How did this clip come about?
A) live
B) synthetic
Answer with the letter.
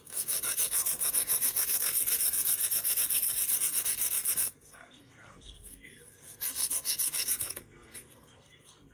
B